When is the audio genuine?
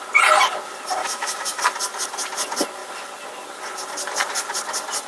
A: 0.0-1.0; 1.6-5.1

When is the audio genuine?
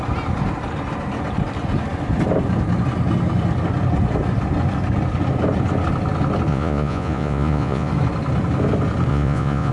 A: 0.0-6.5; 7.9-9.1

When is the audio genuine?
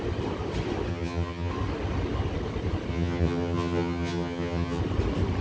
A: 0.0-0.9; 1.5-2.9; 4.8-5.4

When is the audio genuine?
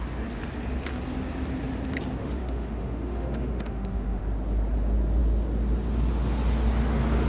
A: 0.0-2.2; 4.2-7.3